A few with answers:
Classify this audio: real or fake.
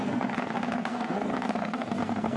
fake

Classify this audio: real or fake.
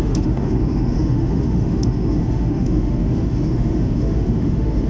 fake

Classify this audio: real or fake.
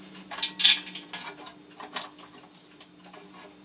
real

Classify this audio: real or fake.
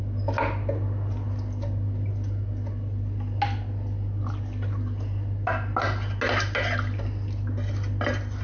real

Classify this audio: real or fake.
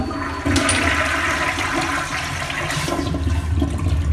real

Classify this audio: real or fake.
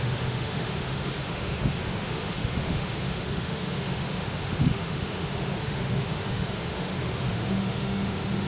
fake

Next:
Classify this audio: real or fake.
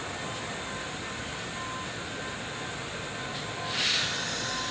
real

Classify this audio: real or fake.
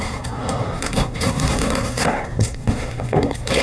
fake